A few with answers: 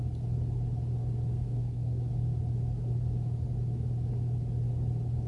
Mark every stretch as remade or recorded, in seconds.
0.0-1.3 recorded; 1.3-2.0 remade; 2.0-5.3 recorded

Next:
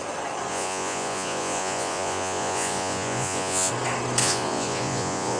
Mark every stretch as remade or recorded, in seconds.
0.0-0.5 recorded; 0.5-3.7 remade; 3.7-4.2 recorded; 4.2-5.4 remade

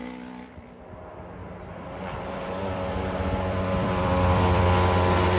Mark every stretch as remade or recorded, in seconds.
0.0-0.8 remade; 0.8-1.4 recorded; 1.4-4.6 remade; 4.6-5.4 recorded

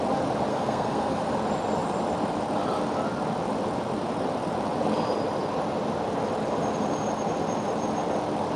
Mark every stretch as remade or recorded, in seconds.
0.0-0.5 recorded; 0.5-1.2 remade; 1.2-8.6 recorded

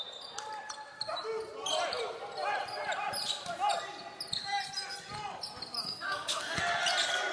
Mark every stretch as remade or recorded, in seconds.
0.0-5.8 recorded; 5.8-6.6 remade; 6.6-7.3 recorded

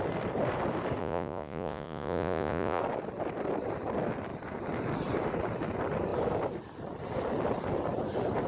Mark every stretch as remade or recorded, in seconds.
0.0-1.0 recorded; 1.0-2.8 remade; 2.8-8.5 recorded

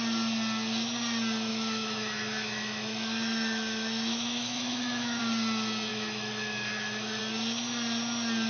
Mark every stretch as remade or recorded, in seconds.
0.0-1.5 recorded; 1.5-5.2 remade; 5.2-5.9 recorded; 5.9-7.2 remade; 7.2-8.5 recorded